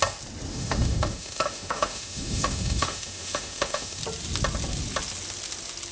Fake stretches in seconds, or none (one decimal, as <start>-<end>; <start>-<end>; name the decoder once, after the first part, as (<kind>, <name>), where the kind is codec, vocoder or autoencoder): 0.5-4.0 (autoencoder, DAC-VAE)